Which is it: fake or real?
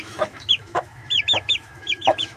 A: fake